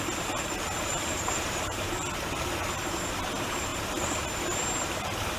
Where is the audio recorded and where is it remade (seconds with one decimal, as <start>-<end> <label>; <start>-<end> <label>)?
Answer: 0.0-0.9 recorded; 0.9-1.9 remade; 1.9-5.4 recorded